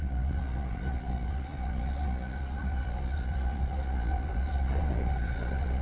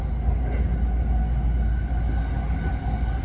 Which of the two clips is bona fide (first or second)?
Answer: second